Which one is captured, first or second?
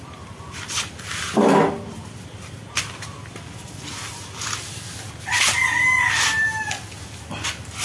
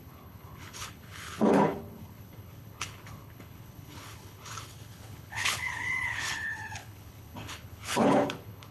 first